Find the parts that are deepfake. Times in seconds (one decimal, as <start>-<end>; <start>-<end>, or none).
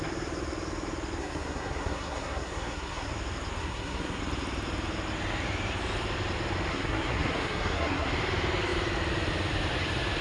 1.2-3.1; 3.6-4.2; 6.7-8.1